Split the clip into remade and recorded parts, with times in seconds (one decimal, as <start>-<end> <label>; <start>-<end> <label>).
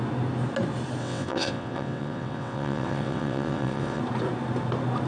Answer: 0.0-1.0 recorded; 1.0-4.0 remade; 4.0-5.1 recorded